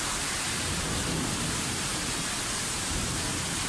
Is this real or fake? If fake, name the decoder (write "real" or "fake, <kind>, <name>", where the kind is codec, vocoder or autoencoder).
fake, vocoder, BigVGAN v2